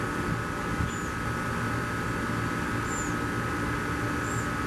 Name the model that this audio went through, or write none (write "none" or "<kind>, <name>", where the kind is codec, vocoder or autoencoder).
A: none